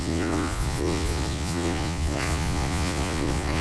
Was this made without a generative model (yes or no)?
no